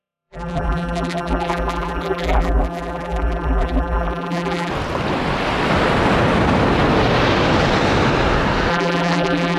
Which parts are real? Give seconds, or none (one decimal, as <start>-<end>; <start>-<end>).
4.7-8.7

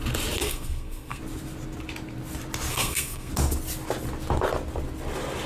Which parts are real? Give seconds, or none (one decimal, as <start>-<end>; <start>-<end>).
0.0-0.4; 1.2-2.7; 3.3-5.5

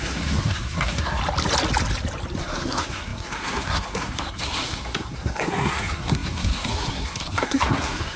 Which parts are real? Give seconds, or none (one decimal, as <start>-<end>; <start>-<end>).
1.2-2.4

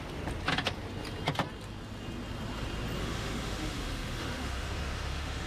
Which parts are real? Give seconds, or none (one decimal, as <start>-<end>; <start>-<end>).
0.0-3.0

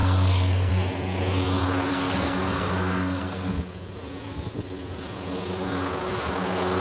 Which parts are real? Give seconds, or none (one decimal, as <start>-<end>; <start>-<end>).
0.7-1.9; 3.5-6.8